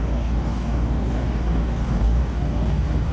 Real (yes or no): no